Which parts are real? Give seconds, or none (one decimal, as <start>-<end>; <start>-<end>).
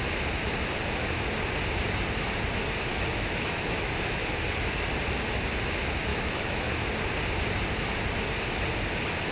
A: 0.0-2.9; 3.9-6.1; 6.7-9.3